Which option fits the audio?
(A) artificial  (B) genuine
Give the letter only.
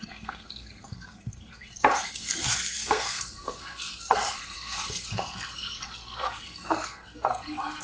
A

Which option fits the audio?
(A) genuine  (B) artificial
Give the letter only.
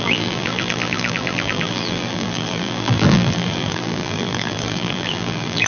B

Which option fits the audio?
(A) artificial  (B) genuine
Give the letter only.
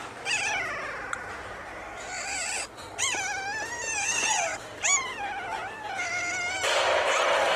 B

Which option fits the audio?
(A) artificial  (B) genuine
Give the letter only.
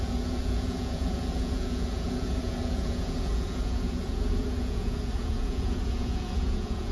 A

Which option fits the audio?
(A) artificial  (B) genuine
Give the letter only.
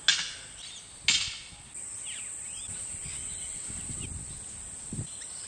B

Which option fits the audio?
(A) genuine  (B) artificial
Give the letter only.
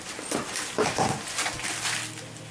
A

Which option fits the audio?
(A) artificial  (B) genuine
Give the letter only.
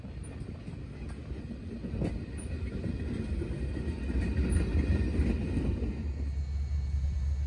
B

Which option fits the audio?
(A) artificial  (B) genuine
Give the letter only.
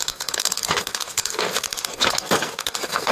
A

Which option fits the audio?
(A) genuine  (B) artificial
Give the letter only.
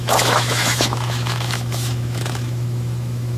B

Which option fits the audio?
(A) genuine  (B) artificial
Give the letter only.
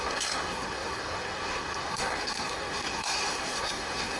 B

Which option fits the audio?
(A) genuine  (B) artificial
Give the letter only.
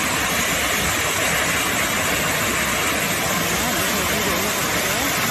A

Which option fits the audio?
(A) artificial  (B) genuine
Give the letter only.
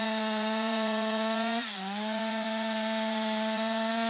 A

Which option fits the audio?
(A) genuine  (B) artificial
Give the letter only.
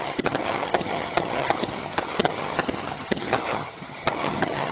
B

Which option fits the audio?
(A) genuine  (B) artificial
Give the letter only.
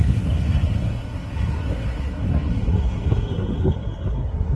B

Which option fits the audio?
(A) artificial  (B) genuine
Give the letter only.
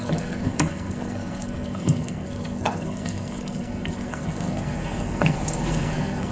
A